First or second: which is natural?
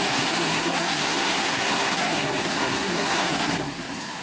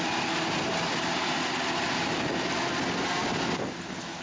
second